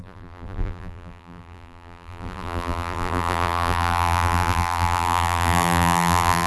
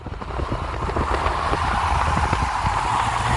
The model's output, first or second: first